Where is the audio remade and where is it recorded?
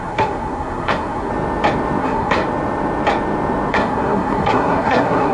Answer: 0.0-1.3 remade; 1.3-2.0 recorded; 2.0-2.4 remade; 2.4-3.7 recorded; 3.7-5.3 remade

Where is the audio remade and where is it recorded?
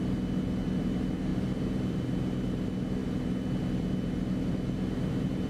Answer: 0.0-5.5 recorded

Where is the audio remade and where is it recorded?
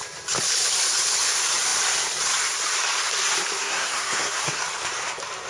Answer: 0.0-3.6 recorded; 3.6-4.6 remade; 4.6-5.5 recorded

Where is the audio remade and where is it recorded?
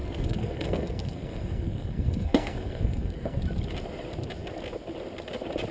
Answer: 0.0-3.4 remade; 3.4-5.7 recorded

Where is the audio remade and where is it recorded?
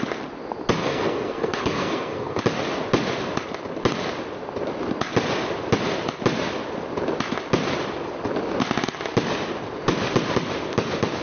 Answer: 0.0-0.8 recorded; 0.8-2.4 remade; 2.4-11.2 recorded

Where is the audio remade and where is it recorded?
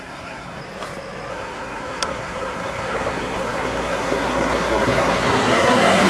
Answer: 0.0-0.6 remade; 0.6-1.3 recorded; 1.3-6.1 remade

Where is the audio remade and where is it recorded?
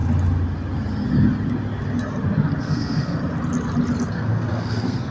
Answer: 0.0-2.6 recorded; 2.6-3.2 remade; 3.2-4.1 recorded; 4.1-5.1 remade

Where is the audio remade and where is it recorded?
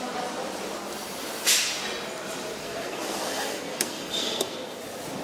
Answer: 0.0-2.6 recorded; 2.6-4.8 remade; 4.8-5.2 recorded